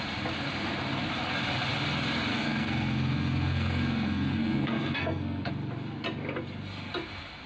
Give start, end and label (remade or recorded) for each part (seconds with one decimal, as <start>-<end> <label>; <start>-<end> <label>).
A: 0.0-2.3 recorded; 2.3-5.5 remade; 5.5-7.5 recorded